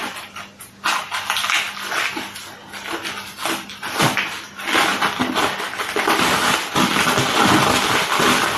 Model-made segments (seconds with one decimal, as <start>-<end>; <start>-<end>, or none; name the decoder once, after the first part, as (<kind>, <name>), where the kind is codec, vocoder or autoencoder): none